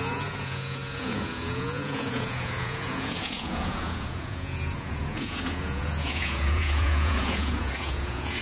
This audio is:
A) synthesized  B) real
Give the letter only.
A